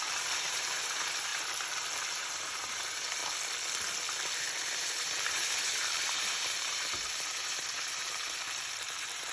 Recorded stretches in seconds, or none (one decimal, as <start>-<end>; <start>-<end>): 1.3-2.1; 3.2-4.6